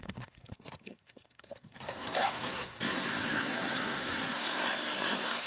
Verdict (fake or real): fake